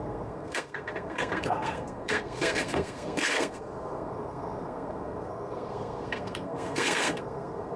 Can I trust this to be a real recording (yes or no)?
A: no